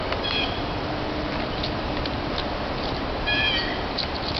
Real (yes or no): yes